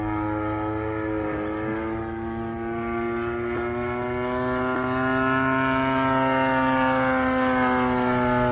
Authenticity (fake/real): real